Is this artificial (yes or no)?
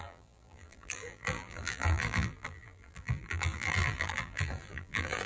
yes